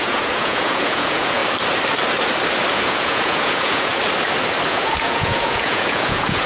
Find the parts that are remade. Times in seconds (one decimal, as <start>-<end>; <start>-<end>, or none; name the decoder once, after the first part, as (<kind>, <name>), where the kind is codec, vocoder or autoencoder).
0.0-1.4 (vocoder, Vocos); 2.7-3.9; 4.7-6.5